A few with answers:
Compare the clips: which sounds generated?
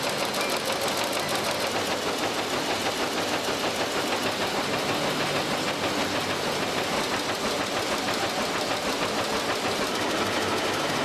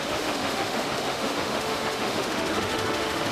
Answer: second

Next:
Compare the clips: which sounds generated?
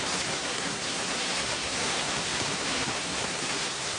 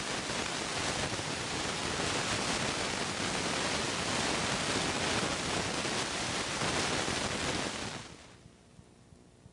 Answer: first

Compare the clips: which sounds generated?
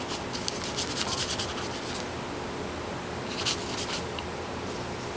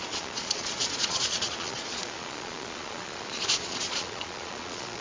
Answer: second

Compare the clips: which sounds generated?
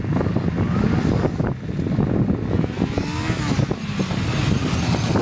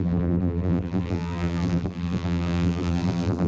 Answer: second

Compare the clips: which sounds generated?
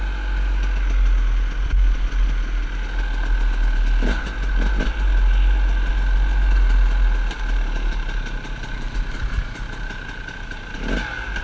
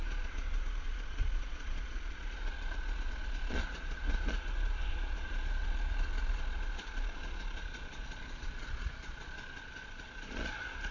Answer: second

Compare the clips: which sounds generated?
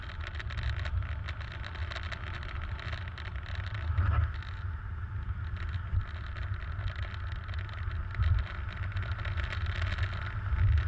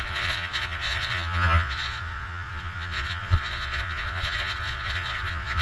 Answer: second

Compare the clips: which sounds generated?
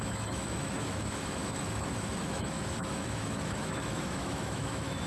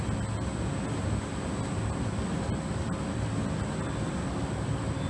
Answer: first